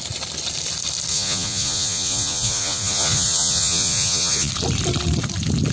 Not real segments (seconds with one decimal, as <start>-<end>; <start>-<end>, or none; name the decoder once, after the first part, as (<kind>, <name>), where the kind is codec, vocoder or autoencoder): 1.1-4.5 (vocoder, Vocos)